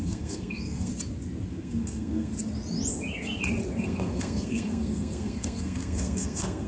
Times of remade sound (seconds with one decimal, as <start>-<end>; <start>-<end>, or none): 0.0-0.9; 1.5-2.3; 3.8-6.7